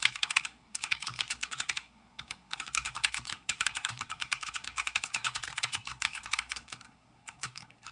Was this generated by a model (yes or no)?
yes